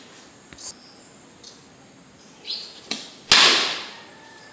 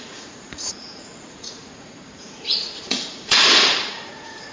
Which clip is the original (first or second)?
first